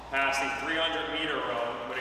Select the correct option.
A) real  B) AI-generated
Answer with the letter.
A